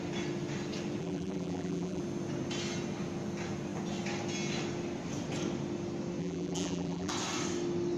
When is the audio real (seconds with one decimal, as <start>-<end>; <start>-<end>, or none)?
0.0-1.0; 2.0-6.2; 7.1-8.0

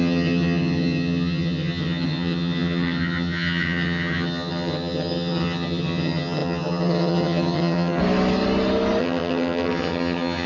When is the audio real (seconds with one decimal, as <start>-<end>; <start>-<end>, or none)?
8.0-9.0

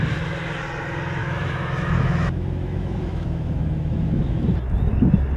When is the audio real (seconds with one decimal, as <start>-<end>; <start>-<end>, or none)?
0.0-1.2; 4.4-5.4

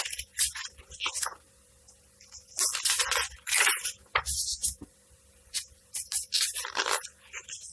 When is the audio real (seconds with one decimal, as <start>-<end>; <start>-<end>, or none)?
0.0-4.6; 6.8-7.7

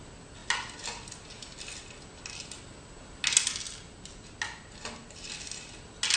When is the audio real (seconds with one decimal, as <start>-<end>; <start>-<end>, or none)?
0.0-6.2

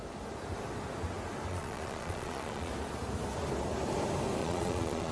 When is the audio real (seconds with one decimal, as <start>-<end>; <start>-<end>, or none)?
0.0-1.5; 2.7-4.4

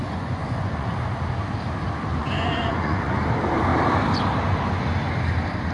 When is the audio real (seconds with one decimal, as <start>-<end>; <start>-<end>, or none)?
0.9-2.2; 3.2-5.7